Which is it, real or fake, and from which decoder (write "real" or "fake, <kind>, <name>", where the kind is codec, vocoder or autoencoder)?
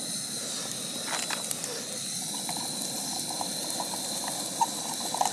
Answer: real